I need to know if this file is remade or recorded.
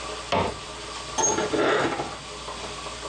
recorded